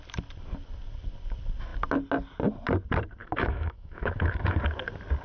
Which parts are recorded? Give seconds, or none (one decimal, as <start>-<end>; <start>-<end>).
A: 0.0-3.2; 4.6-5.2